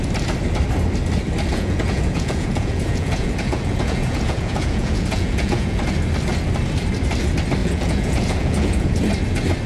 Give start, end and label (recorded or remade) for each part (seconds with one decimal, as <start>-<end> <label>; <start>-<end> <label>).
0.0-1.5 recorded; 1.5-5.8 remade; 5.8-7.6 recorded; 7.6-9.0 remade; 9.0-9.7 recorded